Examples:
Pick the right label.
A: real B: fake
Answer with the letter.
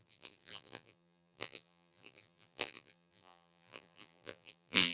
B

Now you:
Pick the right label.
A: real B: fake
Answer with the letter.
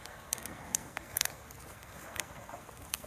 B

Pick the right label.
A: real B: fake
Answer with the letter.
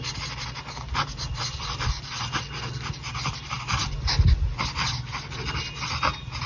A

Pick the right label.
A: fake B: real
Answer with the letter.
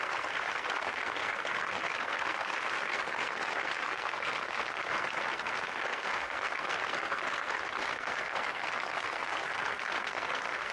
A